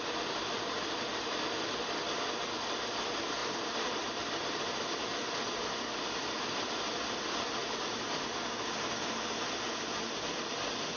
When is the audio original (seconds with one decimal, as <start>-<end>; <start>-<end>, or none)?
0.0-3.4; 6.0-7.6; 8.3-11.0